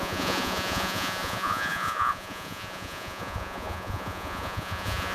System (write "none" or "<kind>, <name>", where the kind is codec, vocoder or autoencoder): vocoder, Vocos